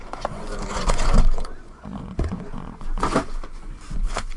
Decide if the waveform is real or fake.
fake